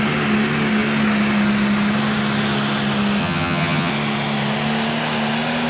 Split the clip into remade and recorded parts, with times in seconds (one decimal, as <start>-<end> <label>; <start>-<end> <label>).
0.0-3.2 recorded; 3.2-3.9 remade; 3.9-5.7 recorded